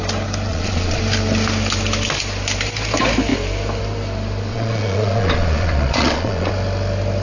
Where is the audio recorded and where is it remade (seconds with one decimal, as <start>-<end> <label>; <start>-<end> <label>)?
0.0-0.5 recorded; 0.5-1.0 remade; 1.0-4.5 recorded; 4.5-6.5 remade; 6.5-7.2 recorded